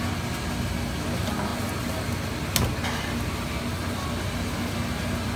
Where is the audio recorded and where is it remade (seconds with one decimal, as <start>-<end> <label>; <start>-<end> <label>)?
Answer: 0.0-5.4 recorded